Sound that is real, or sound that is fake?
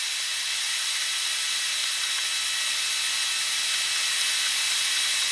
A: real